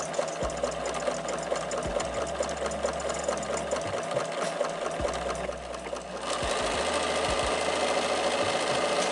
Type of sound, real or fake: real